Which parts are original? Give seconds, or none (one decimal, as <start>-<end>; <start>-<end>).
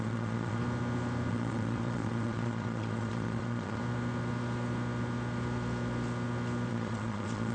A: 0.6-1.3; 3.8-6.7